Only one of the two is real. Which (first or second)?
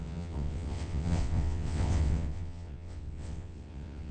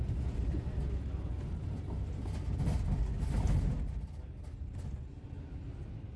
second